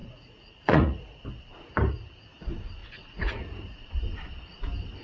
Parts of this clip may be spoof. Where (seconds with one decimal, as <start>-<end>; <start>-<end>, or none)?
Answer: 0.0-1.2; 2.8-3.9